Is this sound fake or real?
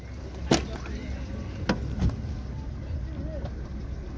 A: real